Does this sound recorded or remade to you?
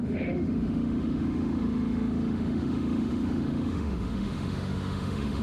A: remade